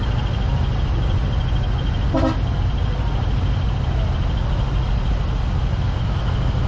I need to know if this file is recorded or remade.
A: recorded